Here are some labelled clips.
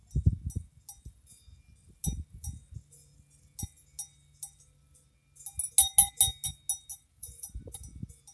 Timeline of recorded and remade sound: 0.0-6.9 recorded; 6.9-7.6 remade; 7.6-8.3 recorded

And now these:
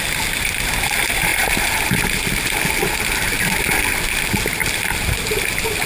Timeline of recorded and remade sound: 0.0-5.9 recorded